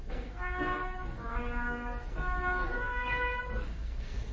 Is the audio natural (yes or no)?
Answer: no